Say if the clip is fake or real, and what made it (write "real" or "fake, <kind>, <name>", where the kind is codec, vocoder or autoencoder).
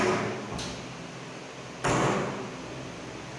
real